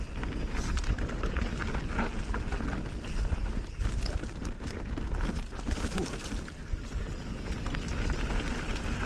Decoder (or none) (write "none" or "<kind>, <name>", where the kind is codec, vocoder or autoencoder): none